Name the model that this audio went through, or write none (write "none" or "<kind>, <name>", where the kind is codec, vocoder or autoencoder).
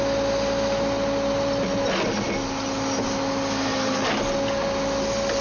none